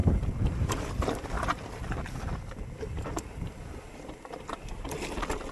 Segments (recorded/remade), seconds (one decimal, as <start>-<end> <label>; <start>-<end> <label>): 0.0-5.5 recorded